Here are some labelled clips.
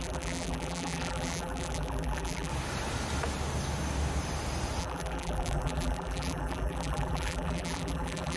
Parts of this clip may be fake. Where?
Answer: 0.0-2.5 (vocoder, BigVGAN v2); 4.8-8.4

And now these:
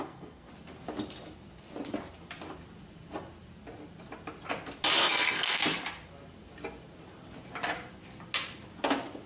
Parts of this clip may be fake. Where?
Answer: 0.0-0.5 (codec, SNAC); 5.0-5.6

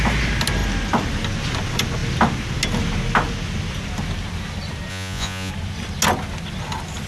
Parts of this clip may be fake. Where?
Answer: 4.9-5.5 (vocoder, Vocos)

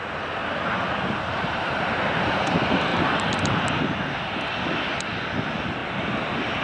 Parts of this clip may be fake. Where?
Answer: 0.4-2.3 (vocoder, BigVGAN v2)

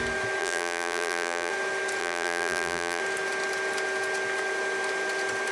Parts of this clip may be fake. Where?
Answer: 0.4-1.5 (vocoder, BigVGAN v2); 2.0-3.0